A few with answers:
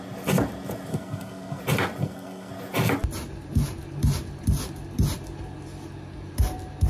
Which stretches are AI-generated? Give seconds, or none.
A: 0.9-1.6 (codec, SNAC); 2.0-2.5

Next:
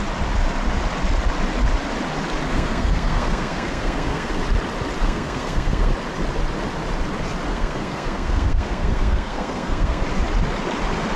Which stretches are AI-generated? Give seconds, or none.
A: 2.5-4.3 (codec, SNAC); 5.0-5.9; 7.5-10.0

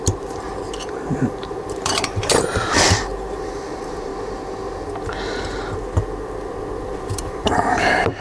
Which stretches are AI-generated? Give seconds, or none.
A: 0.0-4.1 (vocoder, BigVGAN v2); 7.0-8.2

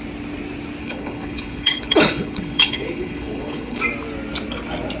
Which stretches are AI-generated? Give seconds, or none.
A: 0.8-3.8 (codec, HILCodec)